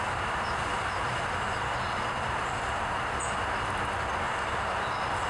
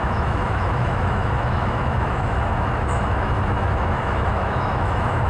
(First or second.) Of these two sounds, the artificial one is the second